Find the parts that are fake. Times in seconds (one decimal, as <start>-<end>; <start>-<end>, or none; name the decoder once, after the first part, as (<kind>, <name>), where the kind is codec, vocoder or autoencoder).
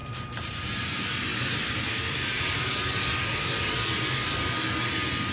0.0-0.6 (vocoder, BigVGAN v2); 1.3-4.5